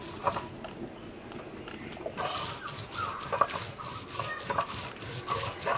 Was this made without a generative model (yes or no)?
yes